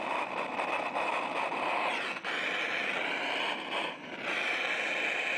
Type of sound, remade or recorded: recorded